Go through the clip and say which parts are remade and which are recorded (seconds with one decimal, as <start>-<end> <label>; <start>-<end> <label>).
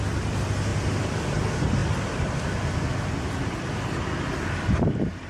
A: 0.0-5.3 recorded